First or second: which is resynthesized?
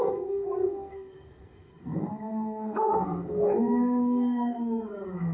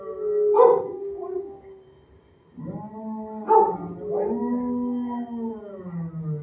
first